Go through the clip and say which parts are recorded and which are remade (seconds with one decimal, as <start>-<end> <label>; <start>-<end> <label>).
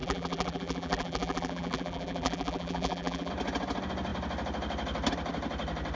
0.0-3.3 remade; 3.3-5.9 recorded